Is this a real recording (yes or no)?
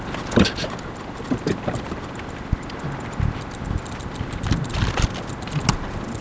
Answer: yes